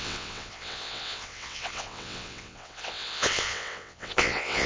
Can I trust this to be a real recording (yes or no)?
no